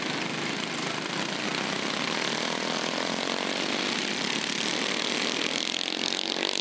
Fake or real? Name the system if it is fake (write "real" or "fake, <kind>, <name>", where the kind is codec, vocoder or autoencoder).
real